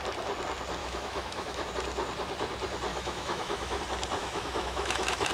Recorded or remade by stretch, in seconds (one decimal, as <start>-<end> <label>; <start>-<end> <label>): 0.0-0.8 recorded; 0.8-1.7 remade; 1.7-2.9 recorded; 2.9-3.8 remade; 3.8-4.2 recorded; 4.2-5.3 remade